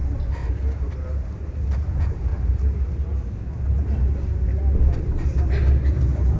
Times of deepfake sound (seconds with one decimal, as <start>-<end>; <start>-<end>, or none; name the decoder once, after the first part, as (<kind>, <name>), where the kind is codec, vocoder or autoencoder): 1.9-2.3 (vocoder, Vocos)